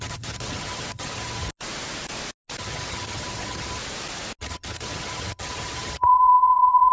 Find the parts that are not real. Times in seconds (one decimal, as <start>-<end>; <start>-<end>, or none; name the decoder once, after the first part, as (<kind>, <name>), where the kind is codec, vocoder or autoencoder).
0.0-1.5 (vocoder, HiFi-GAN); 2.6-3.8; 4.4-6.9